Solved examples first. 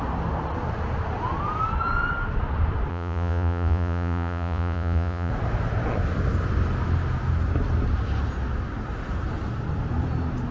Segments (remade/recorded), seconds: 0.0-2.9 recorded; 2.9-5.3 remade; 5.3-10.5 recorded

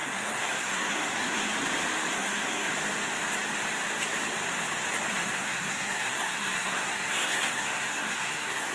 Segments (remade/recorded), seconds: 0.0-1.5 remade; 1.5-2.1 recorded; 2.1-2.7 remade; 2.7-5.1 recorded; 5.1-8.7 remade